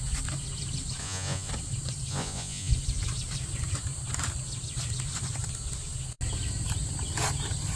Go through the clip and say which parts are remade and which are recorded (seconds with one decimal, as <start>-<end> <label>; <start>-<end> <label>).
0.0-1.0 recorded; 1.0-1.5 remade; 1.5-2.1 recorded; 2.1-2.7 remade; 2.7-7.8 recorded